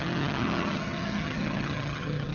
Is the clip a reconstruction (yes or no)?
yes